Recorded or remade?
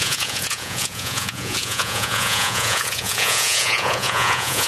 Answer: remade